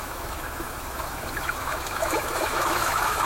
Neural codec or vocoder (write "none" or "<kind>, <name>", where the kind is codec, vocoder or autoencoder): autoencoder, DAC-VAE